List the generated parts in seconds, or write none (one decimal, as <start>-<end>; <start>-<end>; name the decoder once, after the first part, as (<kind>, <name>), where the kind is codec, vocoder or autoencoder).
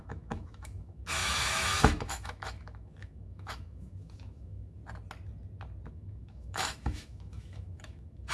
0.0-4.8 (autoencoder, DAC-VAE); 5.9-8.3